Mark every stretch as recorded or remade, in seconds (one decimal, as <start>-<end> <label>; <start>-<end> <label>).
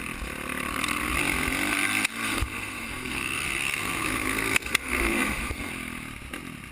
0.0-1.7 recorded; 1.7-5.7 remade; 5.7-6.7 recorded